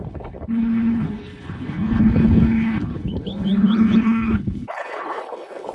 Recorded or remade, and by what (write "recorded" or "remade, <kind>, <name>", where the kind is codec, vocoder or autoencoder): remade, codec, HILCodec